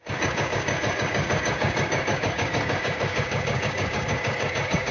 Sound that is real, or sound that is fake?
fake